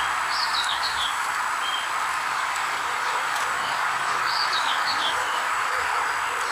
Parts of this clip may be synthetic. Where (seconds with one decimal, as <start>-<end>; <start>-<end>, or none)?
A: 0.4-1.4; 2.1-6.0